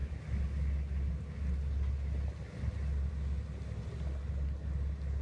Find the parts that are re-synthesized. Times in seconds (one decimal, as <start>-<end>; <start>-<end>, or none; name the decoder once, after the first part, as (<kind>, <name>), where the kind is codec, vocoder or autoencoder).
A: none